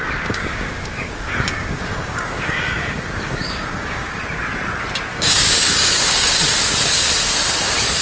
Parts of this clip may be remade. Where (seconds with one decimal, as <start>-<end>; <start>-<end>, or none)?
0.0-4.2; 5.1-6.4